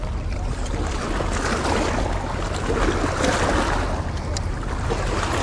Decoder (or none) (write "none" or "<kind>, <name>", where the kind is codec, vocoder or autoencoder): none